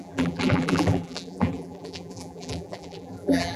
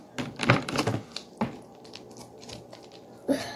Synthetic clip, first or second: first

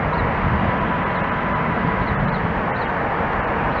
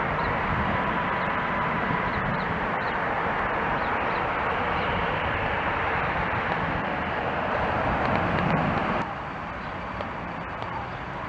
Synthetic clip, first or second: second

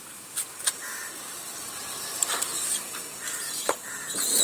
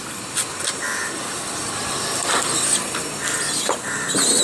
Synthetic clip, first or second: first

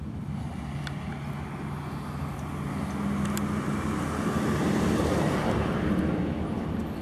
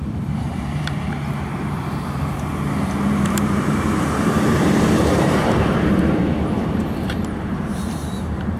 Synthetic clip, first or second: second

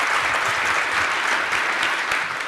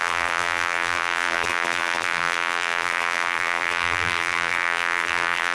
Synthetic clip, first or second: second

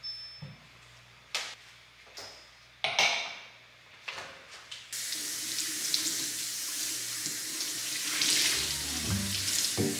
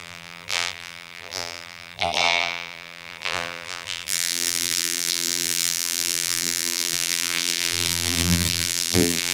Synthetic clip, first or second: second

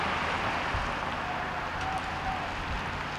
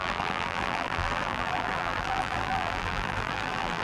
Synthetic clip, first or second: second